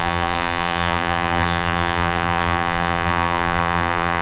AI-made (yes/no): yes